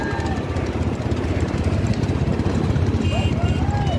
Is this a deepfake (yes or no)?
no